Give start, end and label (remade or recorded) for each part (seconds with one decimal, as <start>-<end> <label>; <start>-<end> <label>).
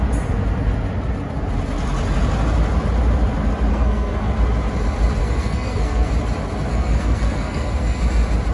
0.0-3.7 recorded; 3.7-4.3 remade; 4.3-5.2 recorded; 5.2-6.1 remade; 6.1-6.7 recorded; 6.7-8.0 remade; 8.0-8.5 recorded